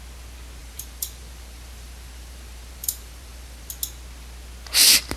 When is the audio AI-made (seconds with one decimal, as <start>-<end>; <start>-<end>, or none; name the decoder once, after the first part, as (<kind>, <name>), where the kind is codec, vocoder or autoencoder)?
0.6-3.7 (vocoder, BigVGAN v2)

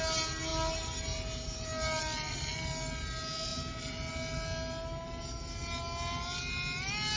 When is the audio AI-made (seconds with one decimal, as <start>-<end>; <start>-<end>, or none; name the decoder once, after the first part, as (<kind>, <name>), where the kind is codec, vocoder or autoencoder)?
none

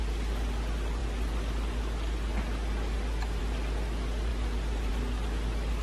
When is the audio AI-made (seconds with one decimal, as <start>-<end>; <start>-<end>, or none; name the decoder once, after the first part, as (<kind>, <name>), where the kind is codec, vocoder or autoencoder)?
none

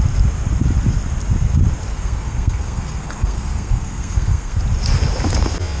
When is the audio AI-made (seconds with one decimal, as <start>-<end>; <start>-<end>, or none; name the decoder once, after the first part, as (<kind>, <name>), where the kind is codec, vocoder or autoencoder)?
1.9-4.6 (codec, SNAC)